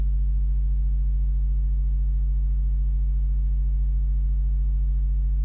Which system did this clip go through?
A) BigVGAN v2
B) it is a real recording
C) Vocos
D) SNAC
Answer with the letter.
A